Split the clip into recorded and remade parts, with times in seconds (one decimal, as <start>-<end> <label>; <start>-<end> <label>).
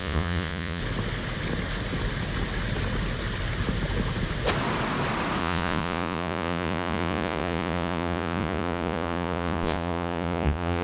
0.0-0.8 remade; 0.8-5.4 recorded; 5.4-10.8 remade